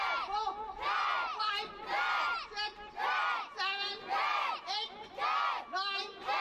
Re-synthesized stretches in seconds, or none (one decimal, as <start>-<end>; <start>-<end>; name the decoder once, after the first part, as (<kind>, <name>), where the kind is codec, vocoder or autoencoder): none